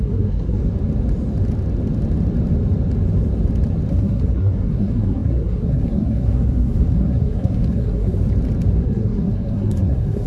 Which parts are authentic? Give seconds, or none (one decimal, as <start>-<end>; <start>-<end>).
0.6-3.9; 8.2-8.8